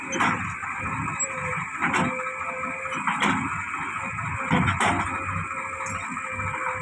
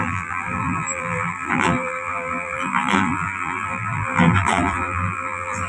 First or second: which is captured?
first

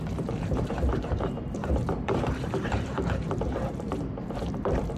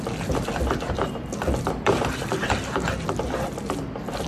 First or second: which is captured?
second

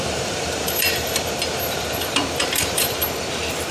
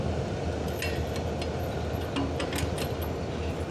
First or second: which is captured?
second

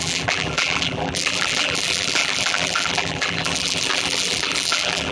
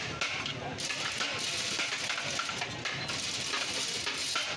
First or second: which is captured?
second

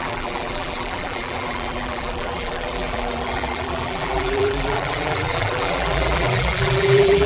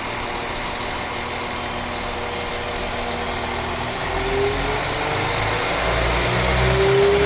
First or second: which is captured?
second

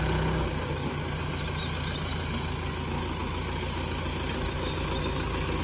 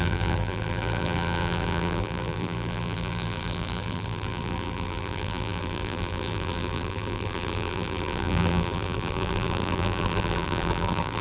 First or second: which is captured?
first